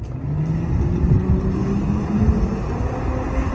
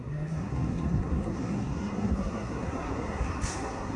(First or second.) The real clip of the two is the first